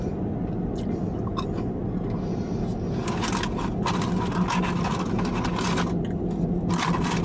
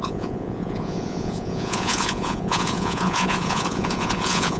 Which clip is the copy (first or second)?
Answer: second